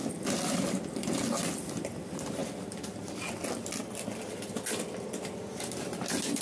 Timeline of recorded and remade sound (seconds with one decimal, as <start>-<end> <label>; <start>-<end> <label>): 0.0-6.4 recorded